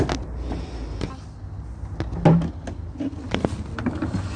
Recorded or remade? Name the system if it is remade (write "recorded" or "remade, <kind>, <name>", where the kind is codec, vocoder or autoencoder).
recorded